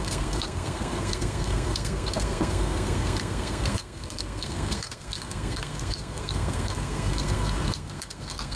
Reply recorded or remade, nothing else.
remade